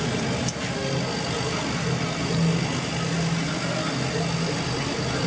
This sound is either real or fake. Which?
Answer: real